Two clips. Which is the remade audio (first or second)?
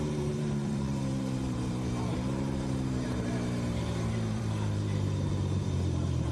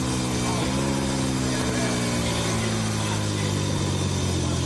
first